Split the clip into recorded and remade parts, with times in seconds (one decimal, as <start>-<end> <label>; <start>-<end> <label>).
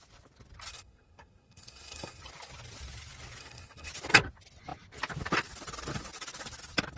0.0-0.7 recorded; 0.7-2.2 remade; 2.2-3.4 recorded; 3.4-3.9 remade; 3.9-7.0 recorded